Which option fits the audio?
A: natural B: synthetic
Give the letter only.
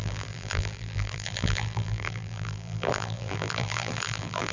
B